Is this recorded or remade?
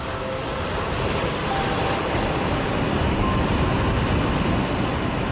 recorded